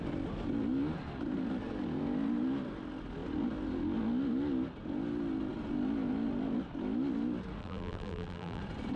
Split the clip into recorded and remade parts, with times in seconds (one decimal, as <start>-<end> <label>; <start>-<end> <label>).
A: 0.0-7.6 recorded; 7.6-8.6 remade; 8.6-9.0 recorded